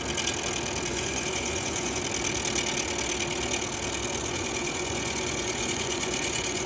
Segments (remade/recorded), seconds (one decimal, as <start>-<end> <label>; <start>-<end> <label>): 0.0-0.9 recorded; 0.9-2.0 remade; 2.0-4.2 recorded; 4.2-6.7 remade